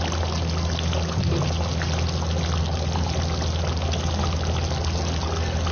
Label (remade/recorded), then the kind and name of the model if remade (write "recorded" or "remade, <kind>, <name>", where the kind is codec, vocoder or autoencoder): recorded